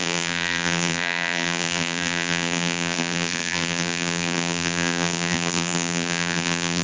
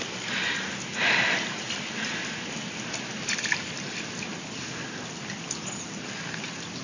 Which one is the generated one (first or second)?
first